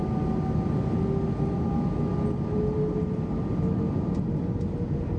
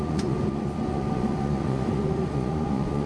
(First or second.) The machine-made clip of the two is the second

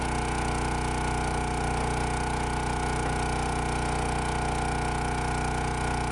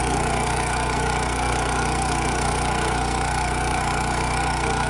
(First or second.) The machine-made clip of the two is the second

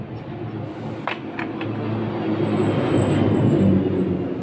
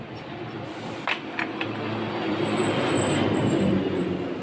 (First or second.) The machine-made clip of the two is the second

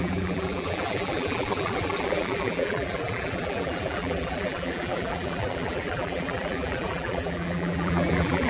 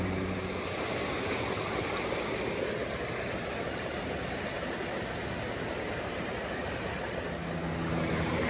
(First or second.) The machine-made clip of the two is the first